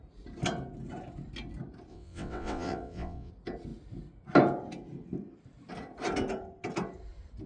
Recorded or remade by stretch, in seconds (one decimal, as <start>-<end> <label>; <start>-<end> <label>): 0.0-1.9 recorded; 1.9-3.3 remade; 3.3-7.5 recorded